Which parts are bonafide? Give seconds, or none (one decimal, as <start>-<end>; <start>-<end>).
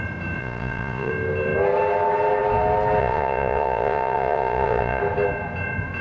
0.0-0.4; 1.1-3.0; 5.0-6.0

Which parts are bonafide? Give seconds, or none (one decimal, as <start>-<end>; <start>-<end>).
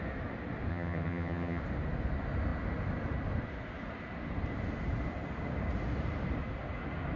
0.0-0.7; 1.6-7.2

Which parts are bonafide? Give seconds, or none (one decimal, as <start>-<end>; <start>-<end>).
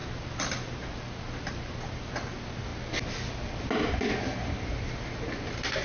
0.0-5.8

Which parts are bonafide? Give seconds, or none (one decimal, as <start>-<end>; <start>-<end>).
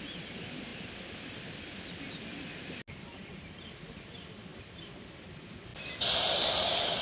0.0-7.0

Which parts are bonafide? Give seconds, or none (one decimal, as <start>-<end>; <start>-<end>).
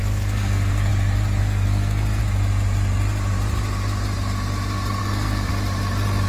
0.9-1.4; 2.2-5.0; 5.5-6.3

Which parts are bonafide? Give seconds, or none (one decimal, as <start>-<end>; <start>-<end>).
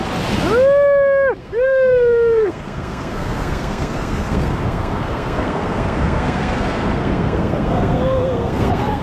0.0-1.4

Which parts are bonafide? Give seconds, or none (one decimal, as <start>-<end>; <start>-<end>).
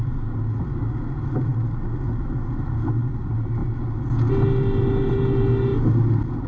0.0-6.5